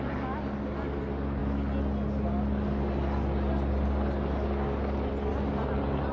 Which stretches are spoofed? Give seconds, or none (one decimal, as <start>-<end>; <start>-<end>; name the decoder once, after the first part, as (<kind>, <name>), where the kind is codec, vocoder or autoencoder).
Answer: none